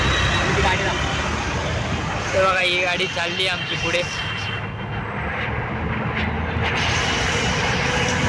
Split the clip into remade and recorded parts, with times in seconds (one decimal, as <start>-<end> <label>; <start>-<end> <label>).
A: 0.0-8.3 recorded